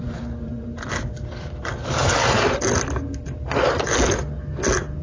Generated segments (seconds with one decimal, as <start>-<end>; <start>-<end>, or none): none